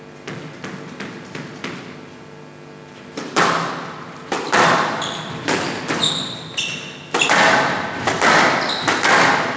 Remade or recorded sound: recorded